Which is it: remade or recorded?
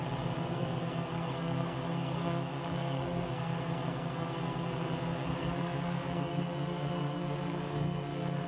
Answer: remade